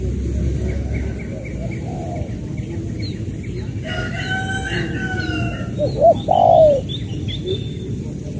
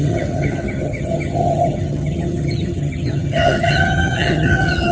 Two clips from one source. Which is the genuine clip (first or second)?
first